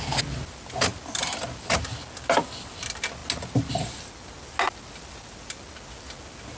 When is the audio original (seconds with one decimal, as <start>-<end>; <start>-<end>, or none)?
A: 0.0-6.6